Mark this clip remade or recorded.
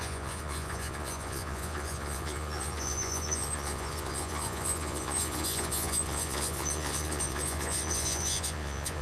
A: remade